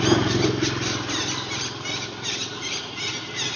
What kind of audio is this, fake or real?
real